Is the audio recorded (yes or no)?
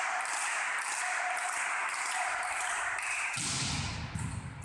yes